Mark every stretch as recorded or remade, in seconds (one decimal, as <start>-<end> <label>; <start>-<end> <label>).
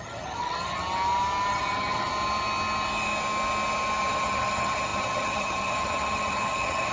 0.0-0.8 remade; 0.8-1.5 recorded; 1.5-2.1 remade; 2.1-4.0 recorded; 4.0-6.9 remade